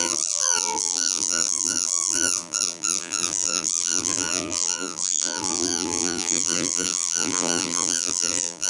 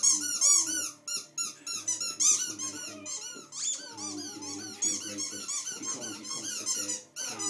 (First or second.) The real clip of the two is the second